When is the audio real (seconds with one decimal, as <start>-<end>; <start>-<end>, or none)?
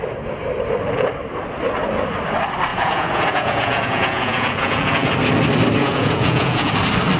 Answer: 0.0-2.7; 5.1-5.8; 6.7-7.2